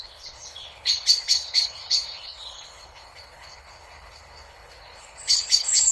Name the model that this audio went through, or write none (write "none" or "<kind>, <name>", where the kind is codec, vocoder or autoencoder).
codec, HILCodec